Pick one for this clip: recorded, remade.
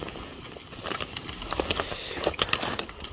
recorded